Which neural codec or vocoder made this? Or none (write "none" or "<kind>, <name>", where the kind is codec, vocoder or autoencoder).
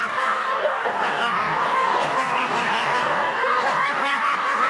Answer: codec, DAC